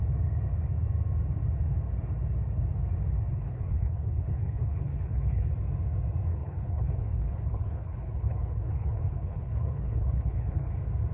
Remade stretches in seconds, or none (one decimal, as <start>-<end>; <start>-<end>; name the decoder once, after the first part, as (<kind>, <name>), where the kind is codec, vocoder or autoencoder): 3.3-5.5 (codec, HILCodec); 6.3-10.7